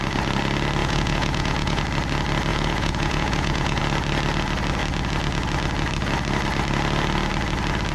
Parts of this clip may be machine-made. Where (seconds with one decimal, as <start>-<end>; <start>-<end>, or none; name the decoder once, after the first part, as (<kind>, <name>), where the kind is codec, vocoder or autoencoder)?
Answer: 0.8-1.8 (vocoder, Vocos); 2.5-3.8